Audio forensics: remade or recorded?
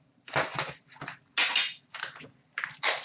recorded